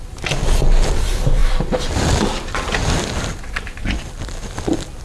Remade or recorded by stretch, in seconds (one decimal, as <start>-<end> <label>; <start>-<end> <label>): 0.0-5.0 recorded